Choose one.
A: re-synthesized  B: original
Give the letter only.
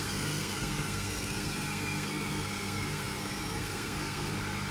A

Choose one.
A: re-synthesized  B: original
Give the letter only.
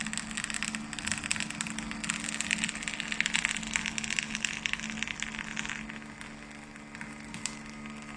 B